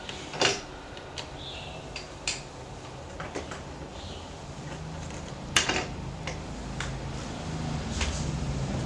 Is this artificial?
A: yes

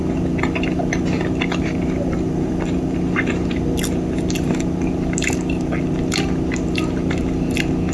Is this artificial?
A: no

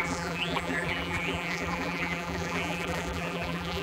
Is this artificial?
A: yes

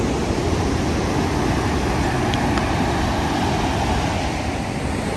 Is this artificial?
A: no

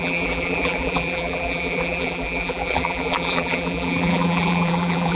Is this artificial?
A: yes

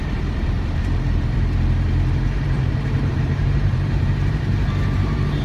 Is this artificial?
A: yes